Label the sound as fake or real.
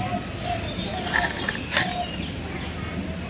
real